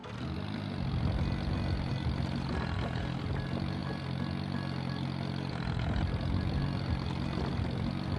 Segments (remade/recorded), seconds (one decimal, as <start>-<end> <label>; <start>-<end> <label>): 0.0-8.2 recorded